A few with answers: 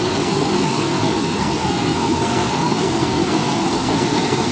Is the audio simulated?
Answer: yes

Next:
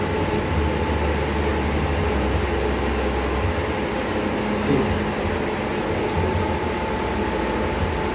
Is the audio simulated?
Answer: no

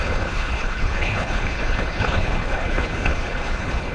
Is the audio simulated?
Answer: yes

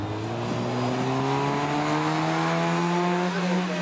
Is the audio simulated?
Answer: no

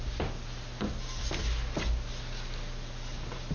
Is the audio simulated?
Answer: no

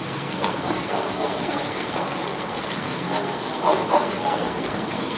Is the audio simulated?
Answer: yes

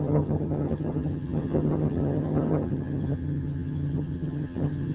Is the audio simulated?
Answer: yes